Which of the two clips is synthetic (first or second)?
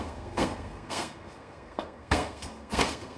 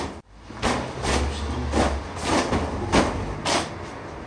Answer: first